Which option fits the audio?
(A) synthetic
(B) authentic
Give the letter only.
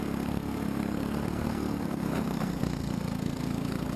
A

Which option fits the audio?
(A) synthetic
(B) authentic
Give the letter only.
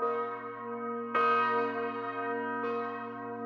B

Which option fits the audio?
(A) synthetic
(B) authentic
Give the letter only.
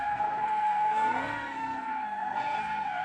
A